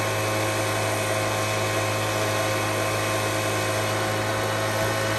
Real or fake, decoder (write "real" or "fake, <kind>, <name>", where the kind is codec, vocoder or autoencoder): real